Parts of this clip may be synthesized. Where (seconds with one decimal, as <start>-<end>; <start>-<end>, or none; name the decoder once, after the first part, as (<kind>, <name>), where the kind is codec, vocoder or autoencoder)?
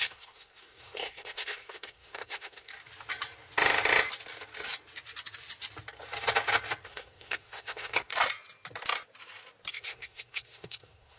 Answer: 0.0-2.7 (codec, SNAC); 6.8-8.1; 9.7-11.2